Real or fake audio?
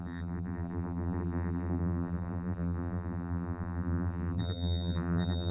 fake